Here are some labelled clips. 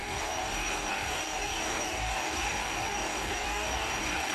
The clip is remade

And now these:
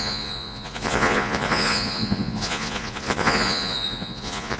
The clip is remade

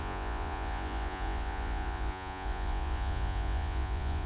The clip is remade